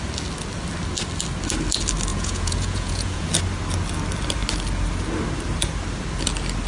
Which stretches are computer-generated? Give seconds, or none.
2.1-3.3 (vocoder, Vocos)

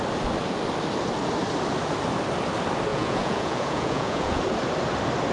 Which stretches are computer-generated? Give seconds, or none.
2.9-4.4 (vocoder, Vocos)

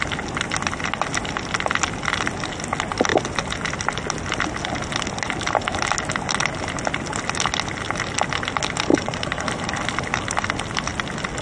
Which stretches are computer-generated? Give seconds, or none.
8.9-9.4 (vocoder, Vocos)

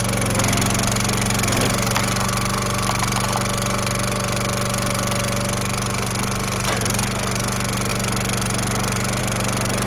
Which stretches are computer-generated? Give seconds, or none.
none